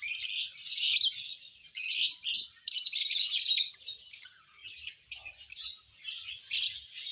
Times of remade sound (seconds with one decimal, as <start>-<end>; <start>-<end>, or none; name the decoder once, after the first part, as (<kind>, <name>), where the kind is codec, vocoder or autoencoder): none